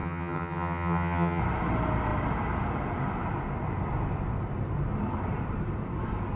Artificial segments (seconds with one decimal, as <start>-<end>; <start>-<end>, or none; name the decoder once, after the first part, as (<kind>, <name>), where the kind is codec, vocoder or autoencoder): 0.0-1.4 (vocoder, HiFi-GAN)